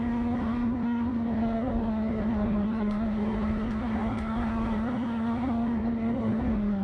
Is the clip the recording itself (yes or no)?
no